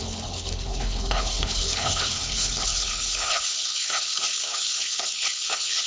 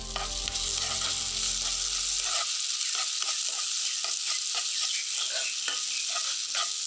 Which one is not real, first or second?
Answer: first